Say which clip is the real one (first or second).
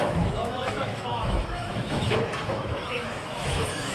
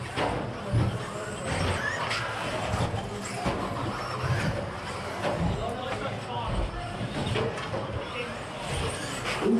second